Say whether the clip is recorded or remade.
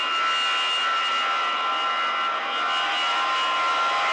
recorded